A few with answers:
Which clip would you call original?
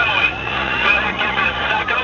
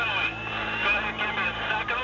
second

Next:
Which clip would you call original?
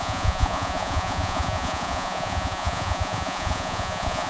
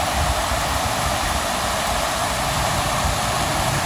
second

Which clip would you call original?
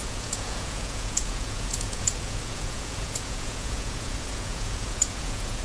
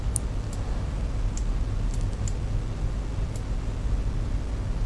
second